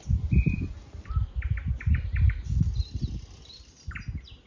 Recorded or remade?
recorded